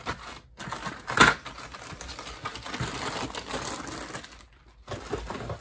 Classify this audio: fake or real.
real